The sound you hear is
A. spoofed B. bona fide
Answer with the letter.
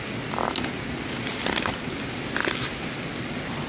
B